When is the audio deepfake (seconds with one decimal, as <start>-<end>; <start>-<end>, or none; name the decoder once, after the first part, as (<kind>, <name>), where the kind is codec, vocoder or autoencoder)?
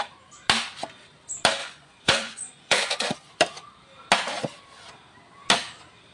1.6-3.3 (vocoder, Vocos)